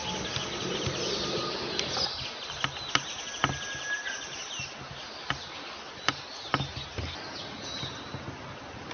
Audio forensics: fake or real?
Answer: real